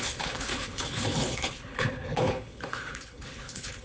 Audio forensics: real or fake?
fake